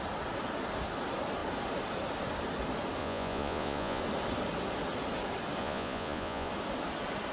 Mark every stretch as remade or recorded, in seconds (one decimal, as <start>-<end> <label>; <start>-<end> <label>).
0.0-3.0 recorded; 3.0-4.0 remade; 4.0-5.6 recorded; 5.6-6.5 remade; 6.5-7.3 recorded